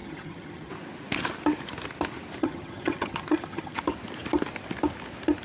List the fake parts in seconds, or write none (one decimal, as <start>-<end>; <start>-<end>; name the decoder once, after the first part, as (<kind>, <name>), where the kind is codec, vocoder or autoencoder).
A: 0.0-0.7 (vocoder, HiFi-GAN); 2.4-3.8